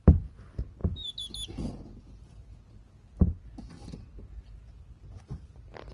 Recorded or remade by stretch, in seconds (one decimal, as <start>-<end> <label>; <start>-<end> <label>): 0.0-5.9 recorded